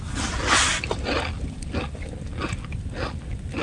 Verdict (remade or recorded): recorded